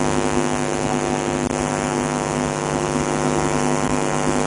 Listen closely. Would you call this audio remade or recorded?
recorded